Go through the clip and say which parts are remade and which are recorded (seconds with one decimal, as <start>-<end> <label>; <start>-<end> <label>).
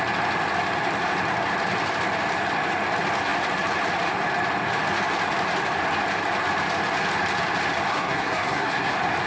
0.0-7.9 recorded; 7.9-8.9 remade; 8.9-9.3 recorded